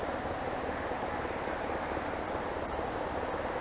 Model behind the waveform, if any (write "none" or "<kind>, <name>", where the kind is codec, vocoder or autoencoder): none